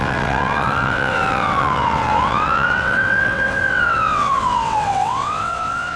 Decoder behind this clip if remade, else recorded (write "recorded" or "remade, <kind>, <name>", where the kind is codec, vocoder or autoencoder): remade, vocoder, WaveNeXt